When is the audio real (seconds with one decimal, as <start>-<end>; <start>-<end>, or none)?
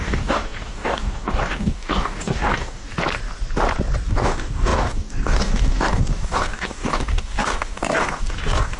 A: 2.9-4.1